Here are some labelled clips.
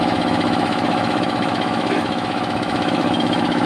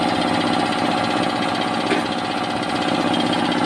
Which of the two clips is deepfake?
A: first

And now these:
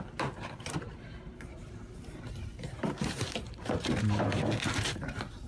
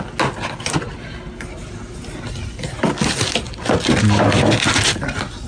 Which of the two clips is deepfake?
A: first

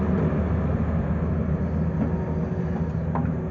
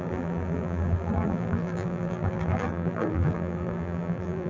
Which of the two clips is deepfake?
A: second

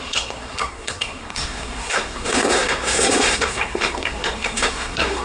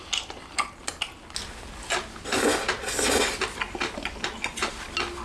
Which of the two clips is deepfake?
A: first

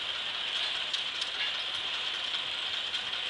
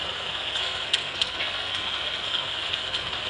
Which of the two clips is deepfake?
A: second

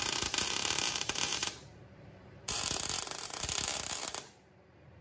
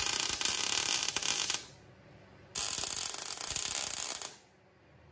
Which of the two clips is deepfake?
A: first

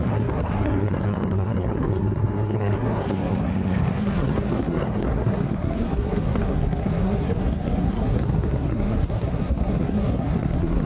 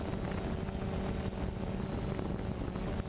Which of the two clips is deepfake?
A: first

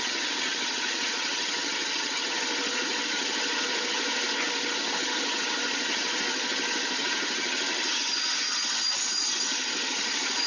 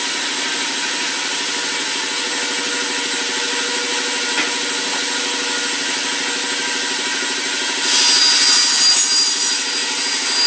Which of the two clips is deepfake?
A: first